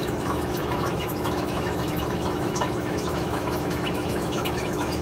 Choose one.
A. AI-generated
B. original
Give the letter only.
A